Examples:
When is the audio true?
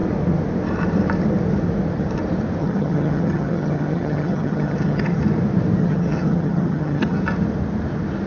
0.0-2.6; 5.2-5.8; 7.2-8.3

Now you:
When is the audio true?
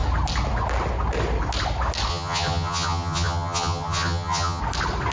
0.0-2.1; 4.6-5.1